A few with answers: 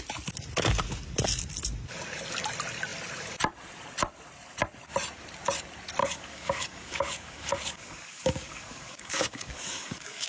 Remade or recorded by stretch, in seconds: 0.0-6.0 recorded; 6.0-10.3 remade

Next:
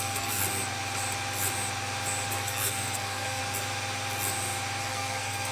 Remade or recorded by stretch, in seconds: 0.0-0.4 remade; 0.4-2.3 recorded; 2.3-3.4 remade; 3.4-4.8 recorded; 4.8-5.5 remade

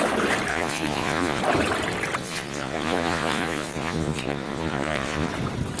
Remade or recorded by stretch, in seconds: 0.0-0.5 recorded; 0.5-1.4 remade; 1.4-2.2 recorded; 2.2-5.3 remade; 5.3-5.8 recorded

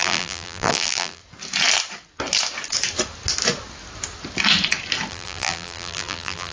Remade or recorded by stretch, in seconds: 0.0-1.2 remade; 1.2-5.1 recorded; 5.1-6.5 remade

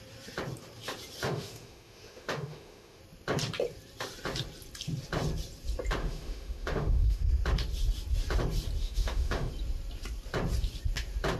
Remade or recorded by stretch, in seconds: 0.0-1.2 recorded; 1.2-3.0 remade; 3.0-6.0 recorded; 6.0-7.3 remade; 7.3-8.8 recorded; 8.8-9.5 remade; 9.5-11.4 recorded

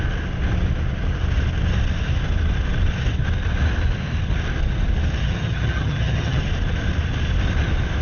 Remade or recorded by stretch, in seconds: 0.0-5.2 recorded; 5.2-6.4 remade; 6.4-8.0 recorded

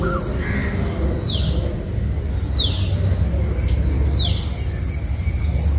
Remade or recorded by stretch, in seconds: 0.0-5.8 recorded